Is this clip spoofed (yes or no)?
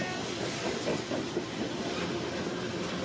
no